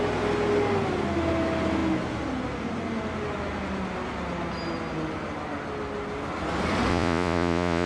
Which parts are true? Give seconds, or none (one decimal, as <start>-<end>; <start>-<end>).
0.0-6.9